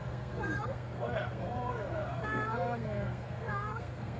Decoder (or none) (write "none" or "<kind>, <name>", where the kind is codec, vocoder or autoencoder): codec, SNAC